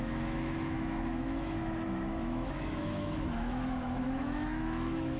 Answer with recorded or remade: remade